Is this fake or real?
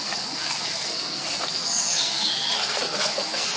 fake